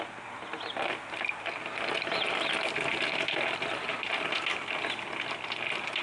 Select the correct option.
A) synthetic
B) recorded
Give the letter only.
B